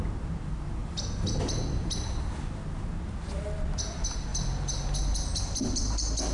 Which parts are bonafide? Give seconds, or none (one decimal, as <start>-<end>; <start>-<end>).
0.0-6.3